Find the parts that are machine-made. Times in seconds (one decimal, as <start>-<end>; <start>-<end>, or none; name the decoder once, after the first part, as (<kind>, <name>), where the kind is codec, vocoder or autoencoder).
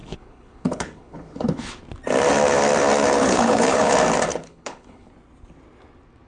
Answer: 0.0-1.8 (codec, HILCodec); 3.2-3.9; 4.3-5.1